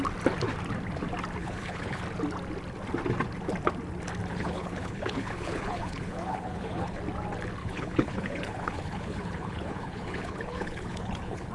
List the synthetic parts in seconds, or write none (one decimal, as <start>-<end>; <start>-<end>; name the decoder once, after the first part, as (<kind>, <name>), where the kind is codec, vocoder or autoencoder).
1.4-2.0 (codec, HILCodec); 4.3-7.0; 7.6-11.5